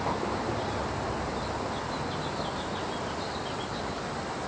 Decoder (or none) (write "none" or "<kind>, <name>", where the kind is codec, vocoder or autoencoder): none